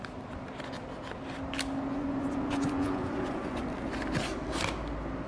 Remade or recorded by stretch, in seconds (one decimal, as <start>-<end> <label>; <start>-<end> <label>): 0.0-1.9 recorded; 1.9-3.6 remade; 3.6-5.3 recorded